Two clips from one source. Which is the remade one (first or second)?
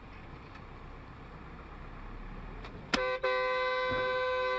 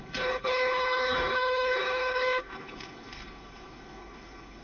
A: second